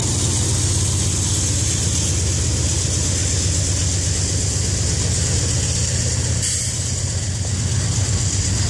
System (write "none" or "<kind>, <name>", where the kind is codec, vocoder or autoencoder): none